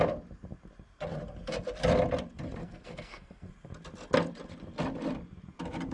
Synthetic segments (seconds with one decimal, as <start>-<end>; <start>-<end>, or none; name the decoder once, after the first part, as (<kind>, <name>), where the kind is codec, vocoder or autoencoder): 2.6-3.5 (codec, SNAC)